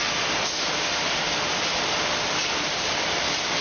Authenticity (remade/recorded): recorded